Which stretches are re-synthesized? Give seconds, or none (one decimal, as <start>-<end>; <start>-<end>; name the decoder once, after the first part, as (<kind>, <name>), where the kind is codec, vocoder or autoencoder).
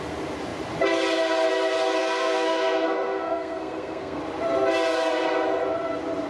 2.0-4.2 (codec, SNAC)